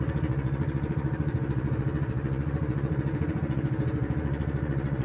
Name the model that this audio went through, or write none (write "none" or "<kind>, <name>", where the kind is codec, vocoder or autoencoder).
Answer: vocoder, Vocos